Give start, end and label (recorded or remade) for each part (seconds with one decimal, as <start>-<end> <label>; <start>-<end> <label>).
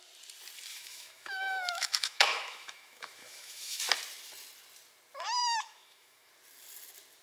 0.0-0.7 recorded; 0.7-3.8 remade; 3.8-5.4 recorded; 5.4-6.3 remade; 6.3-7.2 recorded